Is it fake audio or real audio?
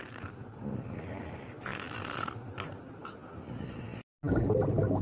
real